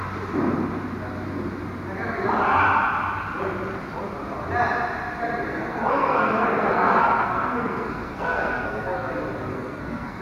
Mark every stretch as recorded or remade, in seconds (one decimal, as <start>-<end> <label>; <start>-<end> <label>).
0.0-5.5 recorded; 5.5-9.1 remade; 9.1-9.5 recorded; 9.5-10.2 remade